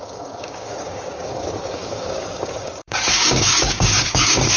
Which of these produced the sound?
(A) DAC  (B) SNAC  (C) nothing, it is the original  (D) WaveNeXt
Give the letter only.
A